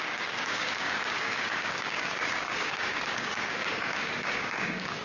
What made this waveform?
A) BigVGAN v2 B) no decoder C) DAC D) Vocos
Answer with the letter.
C